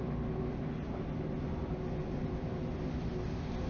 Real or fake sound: real